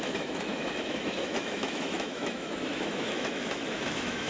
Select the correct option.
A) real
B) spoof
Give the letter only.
B